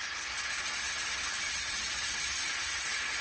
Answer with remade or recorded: recorded